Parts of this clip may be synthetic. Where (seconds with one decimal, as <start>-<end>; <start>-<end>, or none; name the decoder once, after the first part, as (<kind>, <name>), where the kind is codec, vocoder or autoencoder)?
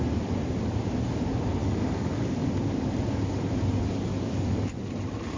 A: 1.6-3.2 (codec, DAC); 4.1-4.7